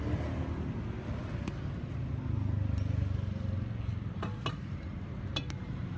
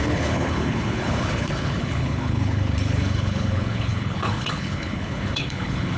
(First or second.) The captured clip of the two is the first